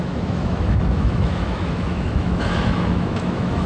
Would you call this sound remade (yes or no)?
yes